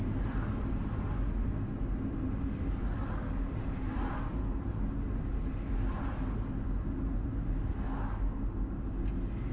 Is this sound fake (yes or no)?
no